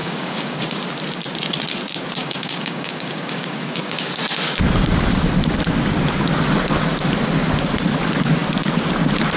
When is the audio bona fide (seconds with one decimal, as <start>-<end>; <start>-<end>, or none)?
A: 0.6-2.2; 4.1-9.4